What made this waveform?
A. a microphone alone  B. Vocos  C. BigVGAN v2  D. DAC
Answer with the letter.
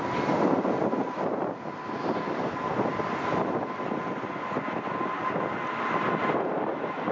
A